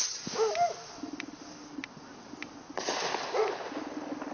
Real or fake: real